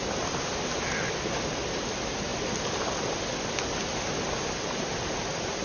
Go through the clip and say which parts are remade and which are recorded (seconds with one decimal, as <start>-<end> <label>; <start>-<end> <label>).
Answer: 0.0-4.9 recorded; 4.9-5.6 remade